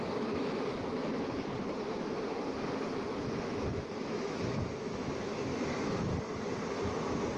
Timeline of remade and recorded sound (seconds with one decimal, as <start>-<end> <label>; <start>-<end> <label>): 0.0-1.5 remade; 1.5-2.8 recorded; 2.8-6.1 remade; 6.1-7.4 recorded